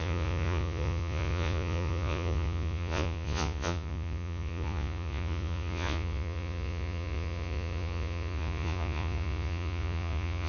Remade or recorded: remade